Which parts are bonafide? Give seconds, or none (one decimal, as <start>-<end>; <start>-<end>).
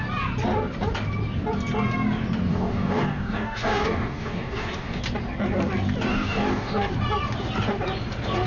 0.0-2.5; 5.0-6.1; 6.9-8.5